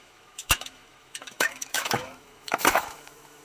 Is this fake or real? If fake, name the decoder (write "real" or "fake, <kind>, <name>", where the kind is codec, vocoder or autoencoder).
fake, autoencoder, DAC-VAE